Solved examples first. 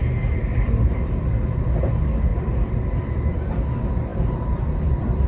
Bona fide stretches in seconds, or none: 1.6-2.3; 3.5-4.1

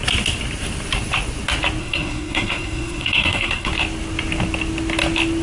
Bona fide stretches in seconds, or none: 0.0-1.8; 3.7-5.4

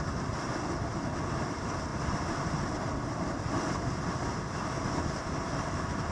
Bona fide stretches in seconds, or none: 0.0-6.1

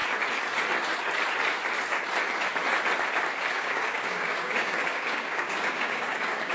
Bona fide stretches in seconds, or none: 0.0-3.5